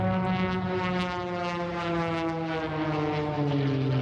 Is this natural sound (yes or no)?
yes